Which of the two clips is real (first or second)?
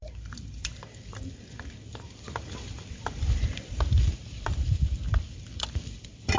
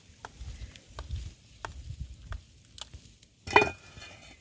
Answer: second